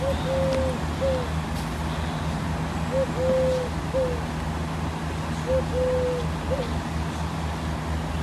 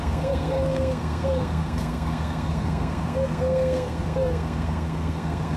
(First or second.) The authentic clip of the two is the first